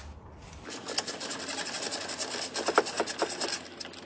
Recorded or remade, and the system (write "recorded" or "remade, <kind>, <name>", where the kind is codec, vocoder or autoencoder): recorded